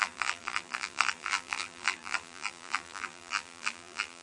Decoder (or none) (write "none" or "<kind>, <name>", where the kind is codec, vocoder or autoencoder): vocoder, BigVGAN v2